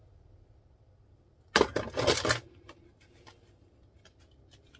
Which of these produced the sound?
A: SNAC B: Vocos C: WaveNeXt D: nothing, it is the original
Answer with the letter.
D